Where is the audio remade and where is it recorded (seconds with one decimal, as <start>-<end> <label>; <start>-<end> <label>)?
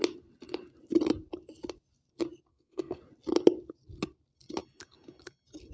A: 0.0-2.5 recorded; 2.5-3.0 remade; 3.0-5.7 recorded